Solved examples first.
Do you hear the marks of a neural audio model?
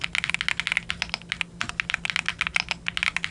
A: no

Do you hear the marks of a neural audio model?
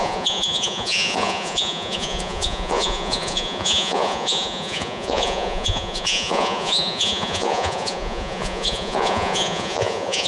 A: yes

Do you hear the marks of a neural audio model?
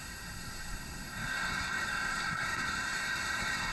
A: yes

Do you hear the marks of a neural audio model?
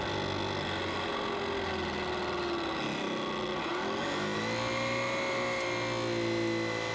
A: no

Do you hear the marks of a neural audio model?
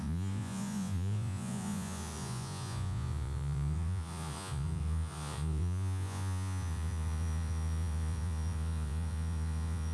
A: yes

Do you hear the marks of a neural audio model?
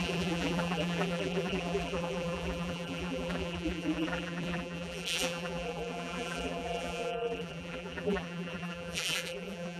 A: yes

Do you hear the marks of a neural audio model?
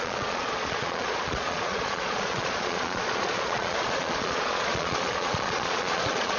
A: yes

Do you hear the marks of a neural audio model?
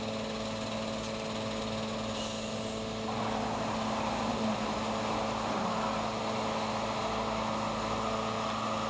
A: no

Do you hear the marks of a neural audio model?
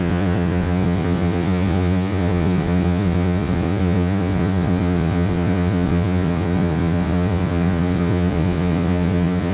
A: yes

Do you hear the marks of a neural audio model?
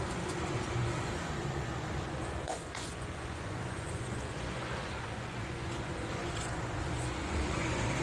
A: yes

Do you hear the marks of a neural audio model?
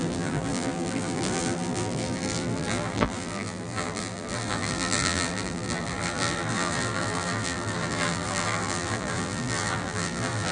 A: yes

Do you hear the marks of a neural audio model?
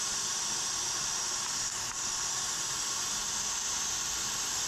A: no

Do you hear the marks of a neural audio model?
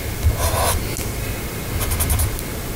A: no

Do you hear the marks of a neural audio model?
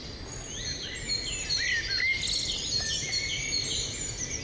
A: no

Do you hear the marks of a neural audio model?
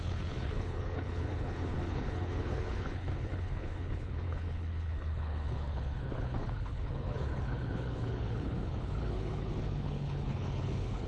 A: yes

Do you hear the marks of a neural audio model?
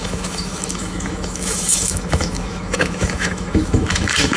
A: yes